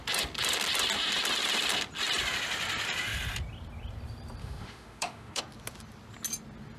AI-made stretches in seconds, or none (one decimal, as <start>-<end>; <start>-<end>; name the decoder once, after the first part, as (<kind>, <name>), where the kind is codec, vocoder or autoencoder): 4.4-5.4 (autoencoder, DAC-VAE)

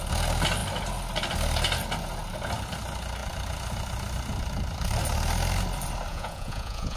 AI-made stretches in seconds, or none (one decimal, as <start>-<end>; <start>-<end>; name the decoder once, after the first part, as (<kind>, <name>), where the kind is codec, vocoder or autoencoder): 6.1-7.0 (vocoder, Vocos)

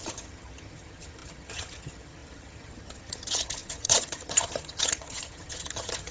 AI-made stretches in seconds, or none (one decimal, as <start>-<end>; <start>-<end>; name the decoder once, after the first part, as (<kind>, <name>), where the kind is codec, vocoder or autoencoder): 0.0-6.1 (vocoder, HiFi-GAN)

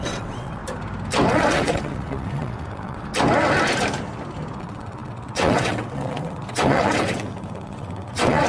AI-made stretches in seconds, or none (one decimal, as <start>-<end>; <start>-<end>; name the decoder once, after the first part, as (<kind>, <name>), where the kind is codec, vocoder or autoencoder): 0.0-0.6 (vocoder, WaveNeXt); 1.3-3.1; 4.6-8.5

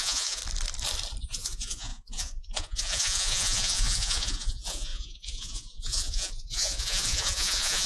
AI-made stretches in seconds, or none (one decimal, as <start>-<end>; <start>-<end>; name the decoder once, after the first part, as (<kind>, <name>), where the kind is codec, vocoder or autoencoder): 0.0-0.4 (vocoder, Vocos); 1.2-7.9

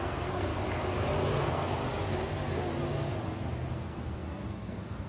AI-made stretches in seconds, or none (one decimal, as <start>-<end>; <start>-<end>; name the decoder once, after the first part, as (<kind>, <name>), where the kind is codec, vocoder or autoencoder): 0.0-0.5 (codec, SNAC); 1.4-1.8; 3.7-5.1